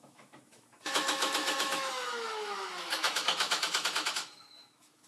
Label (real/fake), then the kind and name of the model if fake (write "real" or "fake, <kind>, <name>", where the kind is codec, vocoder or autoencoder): fake, autoencoder, DAC-VAE